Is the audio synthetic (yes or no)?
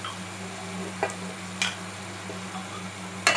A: no